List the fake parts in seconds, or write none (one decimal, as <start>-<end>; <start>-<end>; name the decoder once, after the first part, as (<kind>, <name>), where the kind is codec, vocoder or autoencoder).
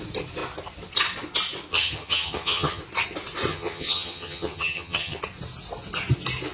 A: 1.7-2.8 (vocoder, HiFi-GAN); 3.5-5.2